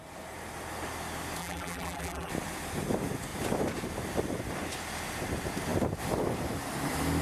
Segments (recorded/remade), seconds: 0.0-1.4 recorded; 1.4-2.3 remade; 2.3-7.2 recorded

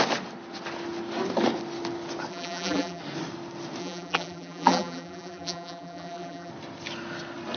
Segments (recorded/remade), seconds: 0.0-2.3 recorded; 2.3-3.0 remade; 3.0-3.8 recorded; 3.8-6.5 remade; 6.5-7.6 recorded

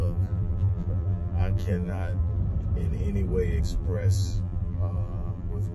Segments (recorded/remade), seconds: 0.0-2.4 remade; 2.4-3.6 recorded; 3.6-5.7 remade